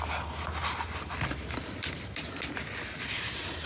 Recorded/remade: recorded